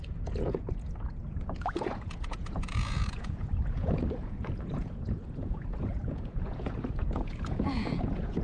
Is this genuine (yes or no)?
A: no